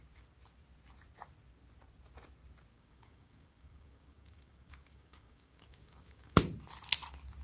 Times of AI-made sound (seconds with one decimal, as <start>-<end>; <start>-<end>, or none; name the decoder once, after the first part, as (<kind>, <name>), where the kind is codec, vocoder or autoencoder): 2.7-6.4 (codec, DAC)